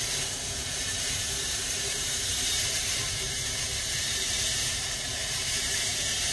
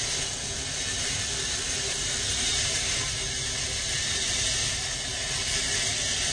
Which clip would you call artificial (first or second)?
first